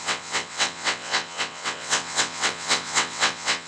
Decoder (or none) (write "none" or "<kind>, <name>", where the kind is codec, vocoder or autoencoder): vocoder, WaveNeXt